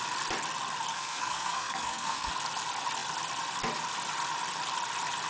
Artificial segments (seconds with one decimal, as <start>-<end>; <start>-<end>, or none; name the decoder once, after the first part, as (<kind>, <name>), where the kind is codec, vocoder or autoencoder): 0.9-2.3 (codec, SNAC)